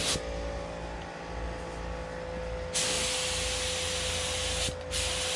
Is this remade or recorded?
recorded